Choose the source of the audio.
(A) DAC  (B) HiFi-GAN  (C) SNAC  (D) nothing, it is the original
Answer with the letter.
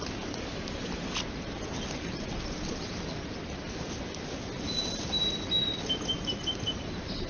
D